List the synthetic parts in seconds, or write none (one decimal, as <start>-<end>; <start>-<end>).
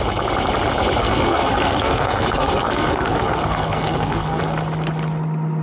1.0-4.4